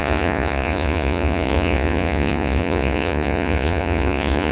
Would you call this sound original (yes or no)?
no